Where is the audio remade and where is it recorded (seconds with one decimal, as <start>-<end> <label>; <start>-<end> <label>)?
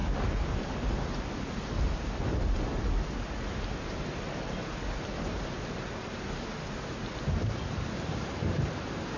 0.0-9.2 recorded